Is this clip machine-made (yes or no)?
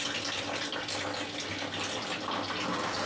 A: no